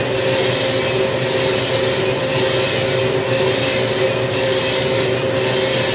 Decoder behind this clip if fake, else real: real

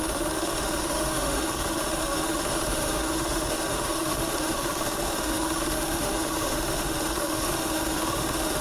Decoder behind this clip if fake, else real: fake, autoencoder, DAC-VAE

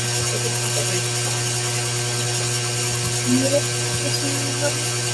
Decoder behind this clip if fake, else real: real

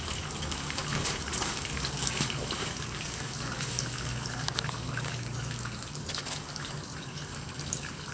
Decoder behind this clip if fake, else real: fake, codec, DAC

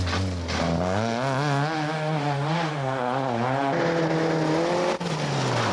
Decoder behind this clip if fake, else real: real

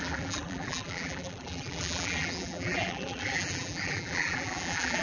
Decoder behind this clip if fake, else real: fake, vocoder, BigVGAN v2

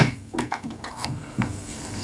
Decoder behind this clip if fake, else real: fake, codec, SNAC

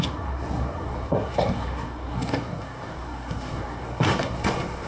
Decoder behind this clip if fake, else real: fake, codec, SNAC